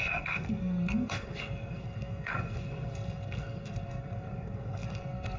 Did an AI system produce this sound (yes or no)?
yes